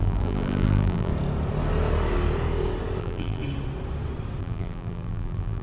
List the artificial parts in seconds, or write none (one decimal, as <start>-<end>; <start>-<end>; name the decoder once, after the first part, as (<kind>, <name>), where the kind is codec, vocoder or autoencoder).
0.0-1.1 (vocoder, BigVGAN v2); 3.0-3.4; 4.4-5.6